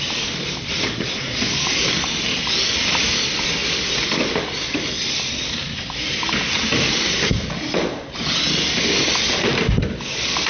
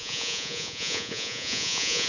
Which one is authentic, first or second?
first